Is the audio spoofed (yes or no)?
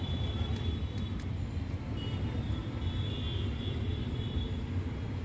no